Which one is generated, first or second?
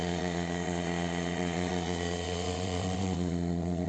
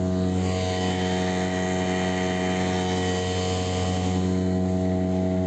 first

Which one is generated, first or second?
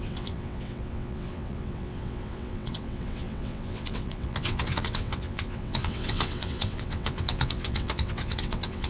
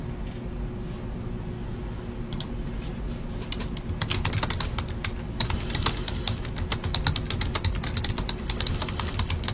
first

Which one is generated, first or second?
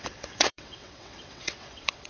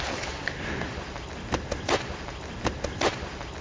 first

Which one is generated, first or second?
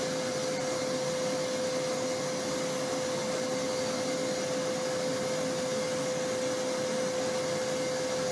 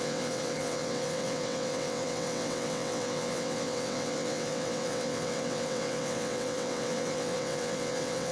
second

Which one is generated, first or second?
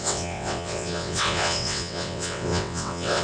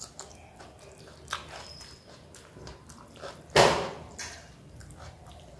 first